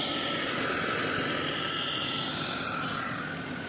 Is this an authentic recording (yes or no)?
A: yes